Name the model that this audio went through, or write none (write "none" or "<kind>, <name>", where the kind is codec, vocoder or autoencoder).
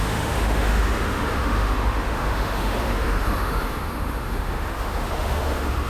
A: autoencoder, DAC-VAE